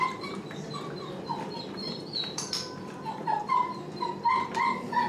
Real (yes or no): no